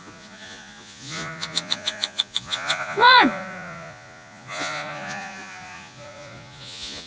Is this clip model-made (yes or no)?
yes